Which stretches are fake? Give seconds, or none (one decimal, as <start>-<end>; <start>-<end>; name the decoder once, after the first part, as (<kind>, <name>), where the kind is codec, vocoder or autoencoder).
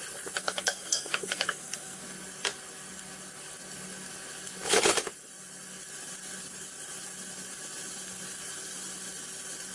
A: 0.4-2.0 (codec, SNAC)